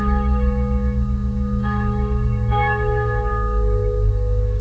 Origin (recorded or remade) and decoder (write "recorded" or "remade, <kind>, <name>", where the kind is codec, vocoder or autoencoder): remade, autoencoder, DAC-VAE